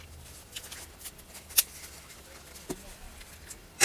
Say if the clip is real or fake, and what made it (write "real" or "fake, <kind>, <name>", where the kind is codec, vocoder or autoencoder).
real